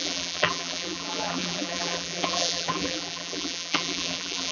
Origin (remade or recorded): remade